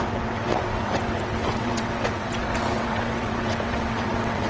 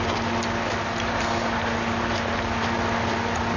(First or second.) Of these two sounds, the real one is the second